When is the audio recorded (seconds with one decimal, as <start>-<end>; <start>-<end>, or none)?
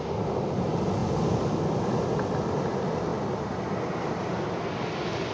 0.0-5.3